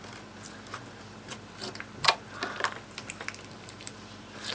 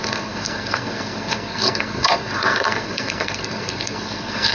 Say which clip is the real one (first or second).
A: first